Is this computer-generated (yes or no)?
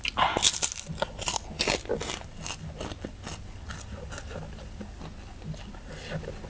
no